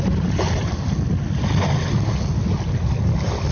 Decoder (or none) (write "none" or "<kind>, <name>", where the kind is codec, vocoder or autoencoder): none